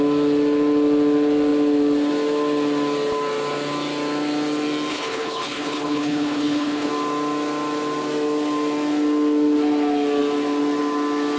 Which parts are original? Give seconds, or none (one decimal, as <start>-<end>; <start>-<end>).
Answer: 0.0-4.9; 6.9-11.4